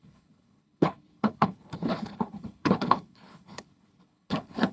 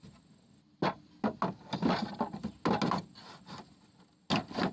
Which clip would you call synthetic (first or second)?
first